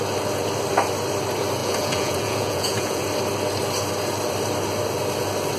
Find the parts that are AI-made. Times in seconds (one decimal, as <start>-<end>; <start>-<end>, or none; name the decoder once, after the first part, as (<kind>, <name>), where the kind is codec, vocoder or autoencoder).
1.6-3.0 (vocoder, Vocos)

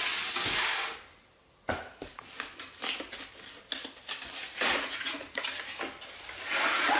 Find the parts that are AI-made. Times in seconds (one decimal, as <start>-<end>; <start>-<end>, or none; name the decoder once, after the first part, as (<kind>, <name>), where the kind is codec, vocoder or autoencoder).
4.4-5.4 (vocoder, Vocos)

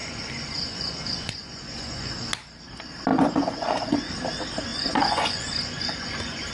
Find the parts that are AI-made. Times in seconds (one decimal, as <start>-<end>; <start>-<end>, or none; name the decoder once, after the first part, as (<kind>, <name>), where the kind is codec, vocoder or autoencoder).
0.0-2.1 (vocoder, Vocos); 3.1-4.1; 4.7-6.5

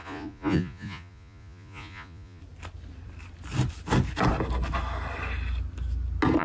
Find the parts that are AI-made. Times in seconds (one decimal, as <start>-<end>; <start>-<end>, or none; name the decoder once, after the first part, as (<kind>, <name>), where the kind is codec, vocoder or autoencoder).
0.0-2.4 (vocoder, Vocos)

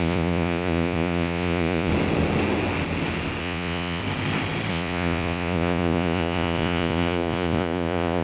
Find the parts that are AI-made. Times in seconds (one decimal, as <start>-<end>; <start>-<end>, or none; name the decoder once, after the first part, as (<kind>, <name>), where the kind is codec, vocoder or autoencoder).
0.0-1.9 (vocoder, Vocos); 3.4-4.0; 4.7-8.2

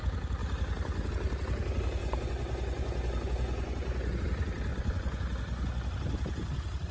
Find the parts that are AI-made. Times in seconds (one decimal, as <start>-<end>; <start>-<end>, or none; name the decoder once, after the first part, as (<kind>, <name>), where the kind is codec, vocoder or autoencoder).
2.0-4.2 (vocoder, Vocos); 4.7-5.9